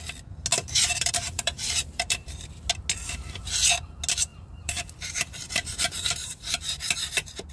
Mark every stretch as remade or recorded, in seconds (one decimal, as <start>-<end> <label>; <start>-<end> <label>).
0.0-0.5 recorded; 0.5-2.7 remade; 2.7-4.3 recorded; 4.3-7.5 remade